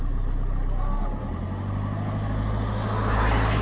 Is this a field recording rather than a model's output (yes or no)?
yes